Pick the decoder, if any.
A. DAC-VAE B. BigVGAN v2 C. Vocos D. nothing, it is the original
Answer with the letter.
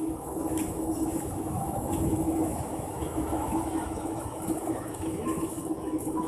A